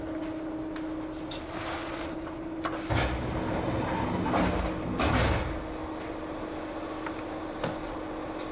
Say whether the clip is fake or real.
real